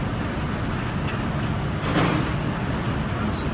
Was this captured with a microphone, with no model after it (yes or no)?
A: yes